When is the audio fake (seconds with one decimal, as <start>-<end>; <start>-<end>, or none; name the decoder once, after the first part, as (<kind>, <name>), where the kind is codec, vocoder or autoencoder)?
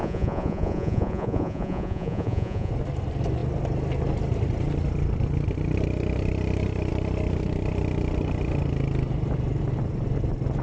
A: 0.0-2.7 (vocoder, Vocos)